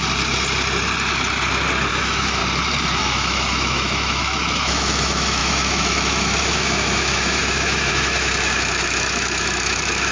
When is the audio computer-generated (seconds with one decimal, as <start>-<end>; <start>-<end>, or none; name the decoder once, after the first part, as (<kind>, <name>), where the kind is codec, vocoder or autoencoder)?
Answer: 1.9-2.4 (autoencoder, DAC-VAE); 3.0-10.1